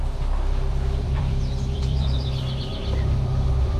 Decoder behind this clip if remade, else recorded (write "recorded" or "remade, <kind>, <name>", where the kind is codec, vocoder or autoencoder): remade, vocoder, BigVGAN v2